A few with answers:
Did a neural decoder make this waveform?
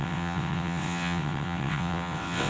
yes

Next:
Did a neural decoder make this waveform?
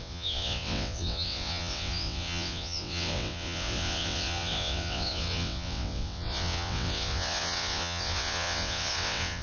yes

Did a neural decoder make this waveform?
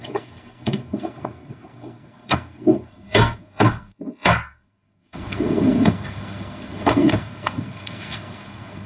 yes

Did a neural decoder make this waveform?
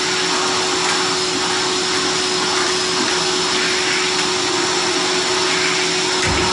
no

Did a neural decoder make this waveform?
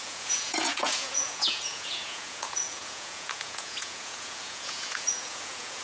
yes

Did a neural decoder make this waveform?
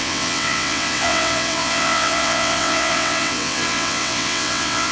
yes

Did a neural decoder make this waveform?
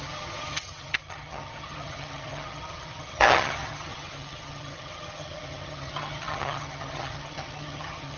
yes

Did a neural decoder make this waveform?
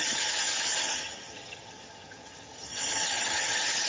yes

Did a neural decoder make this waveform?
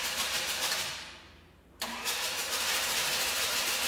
yes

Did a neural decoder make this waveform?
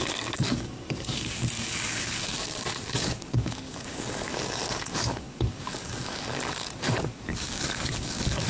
yes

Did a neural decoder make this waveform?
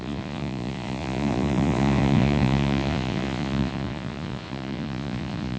yes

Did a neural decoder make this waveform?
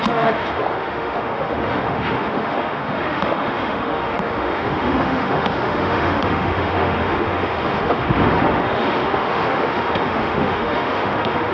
yes